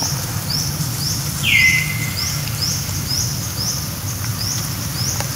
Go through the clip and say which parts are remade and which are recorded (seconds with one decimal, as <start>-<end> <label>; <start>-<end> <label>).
0.0-1.1 remade; 1.1-5.4 recorded